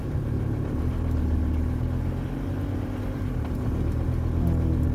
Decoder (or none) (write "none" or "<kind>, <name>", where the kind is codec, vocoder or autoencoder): none